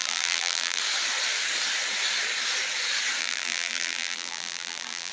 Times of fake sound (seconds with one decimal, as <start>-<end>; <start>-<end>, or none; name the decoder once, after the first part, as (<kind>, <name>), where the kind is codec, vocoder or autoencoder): 0.0-0.8 (vocoder, BigVGAN v2); 3.2-5.1